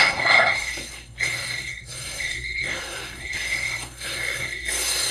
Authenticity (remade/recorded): remade